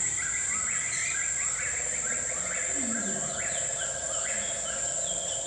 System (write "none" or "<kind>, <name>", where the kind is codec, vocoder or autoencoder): none